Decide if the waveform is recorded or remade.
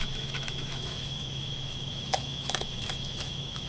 remade